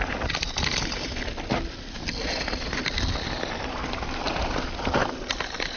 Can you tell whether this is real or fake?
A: real